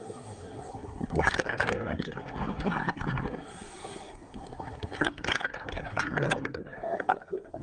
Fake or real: fake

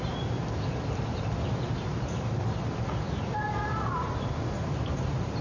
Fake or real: real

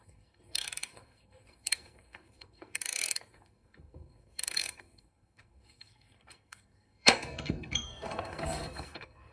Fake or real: fake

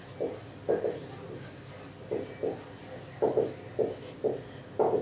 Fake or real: real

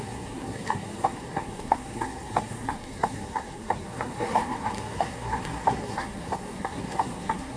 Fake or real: fake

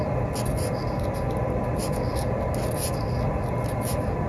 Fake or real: real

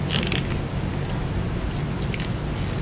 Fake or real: real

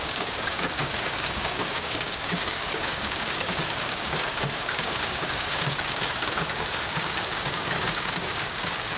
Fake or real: fake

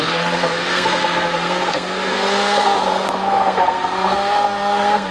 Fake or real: fake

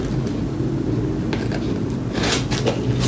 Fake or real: real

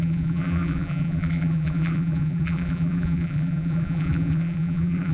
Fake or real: fake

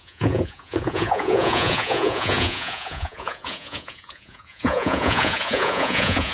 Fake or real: fake